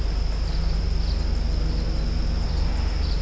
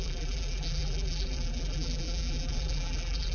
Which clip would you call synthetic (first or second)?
second